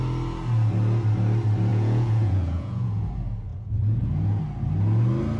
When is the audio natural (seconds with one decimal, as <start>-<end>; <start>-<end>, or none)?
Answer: 0.0-1.7; 3.1-3.5; 4.4-5.4